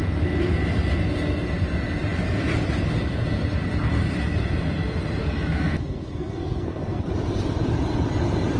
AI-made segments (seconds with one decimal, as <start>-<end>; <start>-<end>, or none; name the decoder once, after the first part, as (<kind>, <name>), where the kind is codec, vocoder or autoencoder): 5.2-7.0 (codec, SNAC)